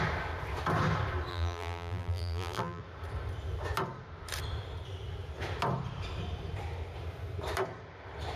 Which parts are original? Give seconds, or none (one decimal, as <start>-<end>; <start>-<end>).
0.0-1.3; 2.8-8.4